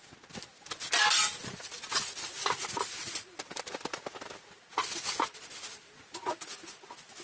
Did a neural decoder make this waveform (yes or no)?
no